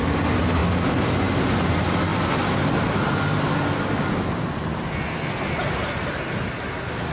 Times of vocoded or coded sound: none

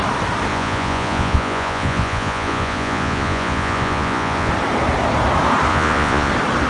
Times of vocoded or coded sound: 0.5-4.5 (vocoder, Vocos); 5.7-6.3